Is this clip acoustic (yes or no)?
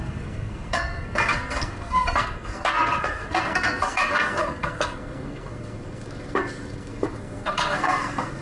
no